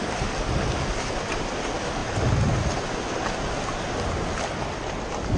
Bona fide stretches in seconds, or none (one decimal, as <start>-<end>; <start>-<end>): 0.0-5.4